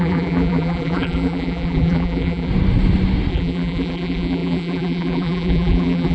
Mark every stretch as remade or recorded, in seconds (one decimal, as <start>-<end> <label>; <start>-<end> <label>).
0.0-2.5 remade; 2.5-3.3 recorded; 3.3-6.1 remade